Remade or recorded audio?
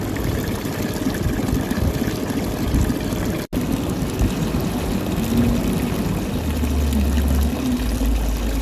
recorded